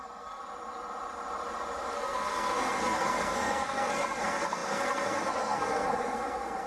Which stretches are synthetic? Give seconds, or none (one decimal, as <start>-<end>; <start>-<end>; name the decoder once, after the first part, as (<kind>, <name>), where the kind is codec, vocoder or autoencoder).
0.0-0.4 (codec, SNAC); 1.9-6.7